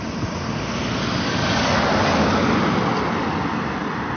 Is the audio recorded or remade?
recorded